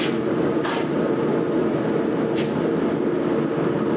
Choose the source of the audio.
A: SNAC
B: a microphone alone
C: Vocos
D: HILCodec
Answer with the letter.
B